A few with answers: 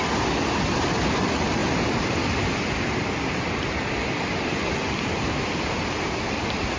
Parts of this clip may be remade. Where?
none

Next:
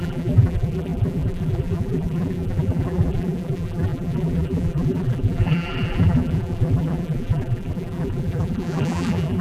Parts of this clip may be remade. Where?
0.0-9.4 (vocoder, BigVGAN v2)

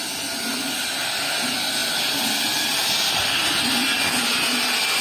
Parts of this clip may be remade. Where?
none

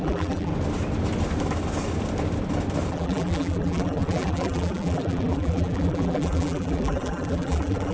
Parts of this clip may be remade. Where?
0.0-0.5 (vocoder, BigVGAN v2); 2.9-7.9

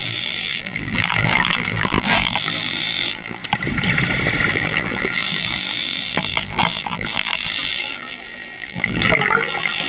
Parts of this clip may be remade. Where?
0.0-3.4 (vocoder, BigVGAN v2); 4.5-9.9

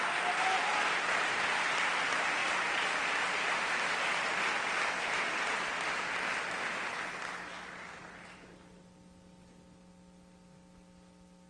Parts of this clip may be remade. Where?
2.4-3.5 (vocoder, BigVGAN v2); 6.1-6.9